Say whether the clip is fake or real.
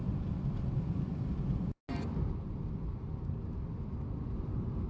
real